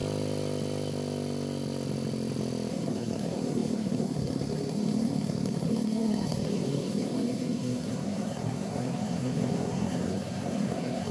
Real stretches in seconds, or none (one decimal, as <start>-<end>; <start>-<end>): 0.0-2.7